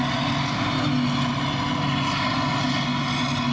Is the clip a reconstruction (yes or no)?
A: no